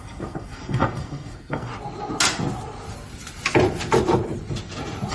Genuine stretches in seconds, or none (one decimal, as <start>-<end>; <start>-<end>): 1.7-5.1